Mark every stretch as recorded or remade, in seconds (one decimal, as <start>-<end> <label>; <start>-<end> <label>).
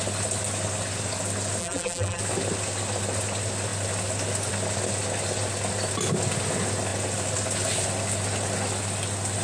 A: 0.0-1.6 recorded; 1.6-2.2 remade; 2.2-9.4 recorded